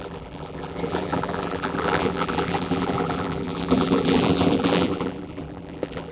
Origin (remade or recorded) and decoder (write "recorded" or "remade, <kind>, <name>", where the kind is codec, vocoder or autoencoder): remade, vocoder, BigVGAN v2